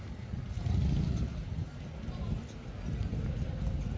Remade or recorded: recorded